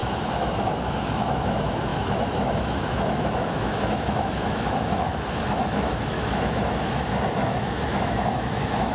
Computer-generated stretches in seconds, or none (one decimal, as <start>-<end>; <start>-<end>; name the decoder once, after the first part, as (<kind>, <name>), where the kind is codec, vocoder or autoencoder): 0.0-8.9 (autoencoder, DAC-VAE)